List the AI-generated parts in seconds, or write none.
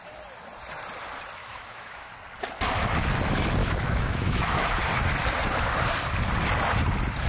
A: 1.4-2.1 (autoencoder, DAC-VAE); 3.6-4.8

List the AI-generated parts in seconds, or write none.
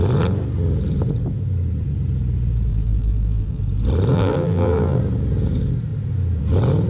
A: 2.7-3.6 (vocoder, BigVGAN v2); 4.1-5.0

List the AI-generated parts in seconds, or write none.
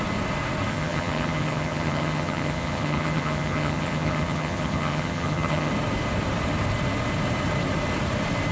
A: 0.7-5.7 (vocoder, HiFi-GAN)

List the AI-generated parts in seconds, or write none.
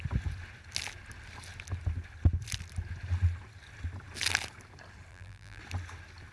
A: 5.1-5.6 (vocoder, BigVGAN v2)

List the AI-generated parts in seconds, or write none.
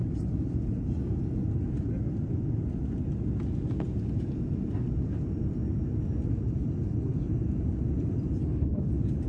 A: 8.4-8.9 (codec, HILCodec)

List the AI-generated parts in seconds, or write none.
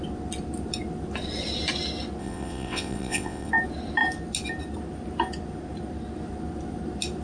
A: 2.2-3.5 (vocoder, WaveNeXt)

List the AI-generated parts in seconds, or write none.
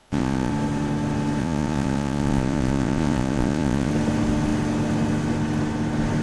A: 0.0-0.5 (vocoder, Vocos); 1.4-3.9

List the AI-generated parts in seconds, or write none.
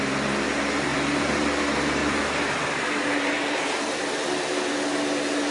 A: 0.9-1.6 (vocoder, BigVGAN v2); 2.0-4.7